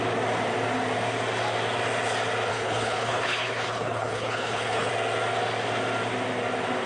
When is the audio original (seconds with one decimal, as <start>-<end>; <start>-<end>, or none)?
0.0-2.5; 4.9-6.9